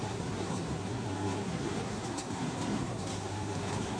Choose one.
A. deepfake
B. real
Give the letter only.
A